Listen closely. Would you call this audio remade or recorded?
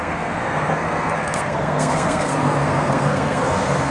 remade